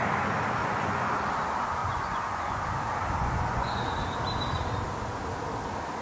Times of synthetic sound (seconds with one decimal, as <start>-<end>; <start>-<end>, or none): 0.6-1.1; 1.8-2.6; 3.2-3.9